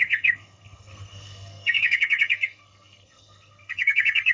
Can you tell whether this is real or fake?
fake